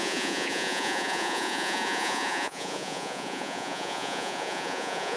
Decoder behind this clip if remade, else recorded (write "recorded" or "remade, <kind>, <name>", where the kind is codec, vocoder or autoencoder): remade, vocoder, Vocos